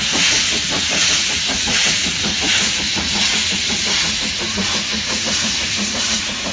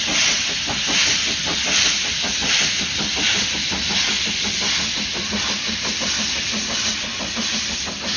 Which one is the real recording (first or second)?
second